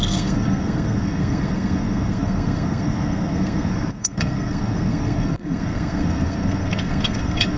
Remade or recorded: remade